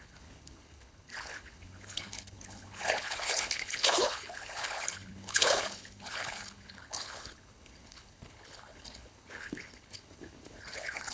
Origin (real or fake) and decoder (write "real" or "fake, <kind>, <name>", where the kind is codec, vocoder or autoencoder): fake, codec, HILCodec